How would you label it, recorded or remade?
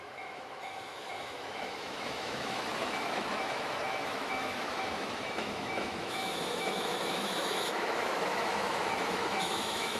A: remade